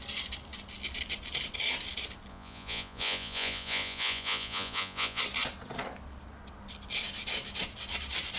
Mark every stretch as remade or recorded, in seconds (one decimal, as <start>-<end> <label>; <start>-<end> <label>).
0.0-2.3 recorded; 2.3-5.2 remade; 5.2-8.4 recorded